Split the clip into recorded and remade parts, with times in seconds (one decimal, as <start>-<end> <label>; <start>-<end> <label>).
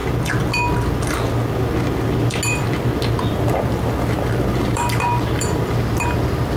0.0-3.3 recorded; 3.3-6.6 remade